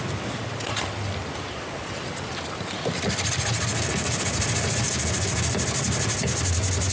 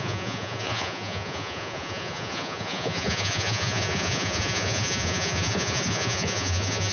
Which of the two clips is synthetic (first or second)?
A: second